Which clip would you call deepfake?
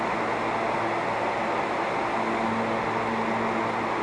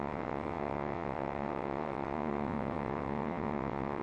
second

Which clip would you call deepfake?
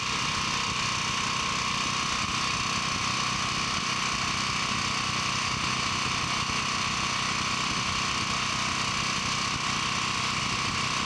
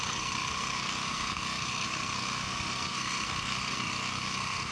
second